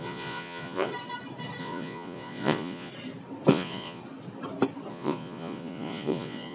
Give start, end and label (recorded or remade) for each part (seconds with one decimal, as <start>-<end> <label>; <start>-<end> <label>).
0.0-0.9 remade; 0.9-1.6 recorded; 1.6-2.9 remade; 2.9-3.5 recorded; 3.5-4.0 remade; 4.0-4.9 recorded; 4.9-6.5 remade